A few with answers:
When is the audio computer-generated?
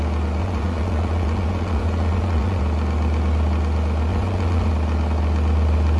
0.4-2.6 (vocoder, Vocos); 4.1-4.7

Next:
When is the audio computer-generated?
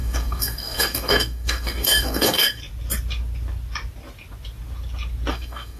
0.0-2.6 (codec, DAC); 5.3-5.8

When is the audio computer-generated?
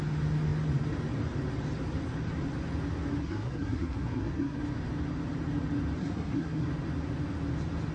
3.2-4.6 (codec, SNAC); 6.0-6.7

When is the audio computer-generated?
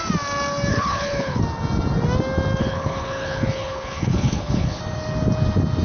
0.7-1.4 (codec, HILCodec); 2.6-4.8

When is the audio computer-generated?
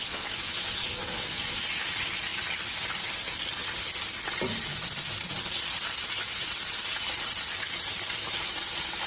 0.0-1.6 (vocoder, Vocos)